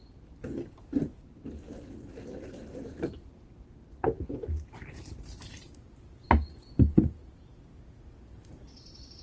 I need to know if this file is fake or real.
real